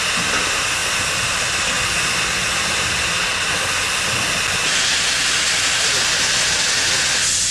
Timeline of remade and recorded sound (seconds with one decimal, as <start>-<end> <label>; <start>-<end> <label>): 0.0-7.5 recorded